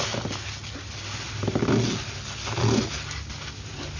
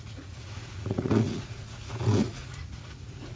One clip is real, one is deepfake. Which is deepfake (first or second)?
second